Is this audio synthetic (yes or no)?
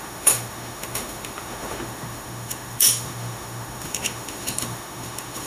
yes